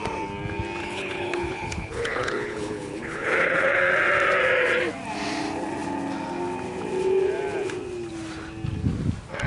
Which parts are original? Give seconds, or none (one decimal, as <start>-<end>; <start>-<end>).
0.0-0.8; 3.8-9.5